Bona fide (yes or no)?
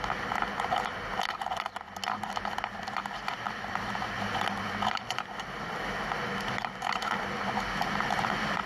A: yes